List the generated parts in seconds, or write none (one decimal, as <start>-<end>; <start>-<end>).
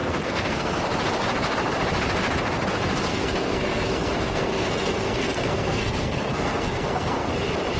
0.0-0.8; 3.1-7.3